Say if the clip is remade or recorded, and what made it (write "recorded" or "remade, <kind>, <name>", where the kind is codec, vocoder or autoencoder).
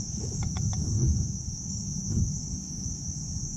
remade, codec, DAC